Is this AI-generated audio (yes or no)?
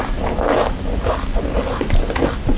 no